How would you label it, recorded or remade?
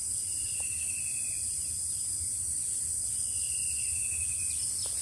recorded